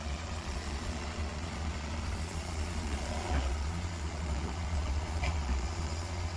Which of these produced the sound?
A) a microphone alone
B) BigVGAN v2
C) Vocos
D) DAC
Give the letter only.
C